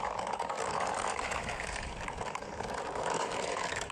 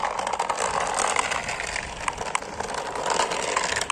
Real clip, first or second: second